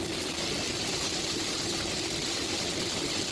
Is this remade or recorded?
recorded